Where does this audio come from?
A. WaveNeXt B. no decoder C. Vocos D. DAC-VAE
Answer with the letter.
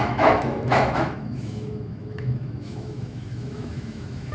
D